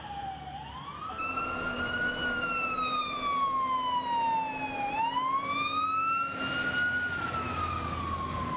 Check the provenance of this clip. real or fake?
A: real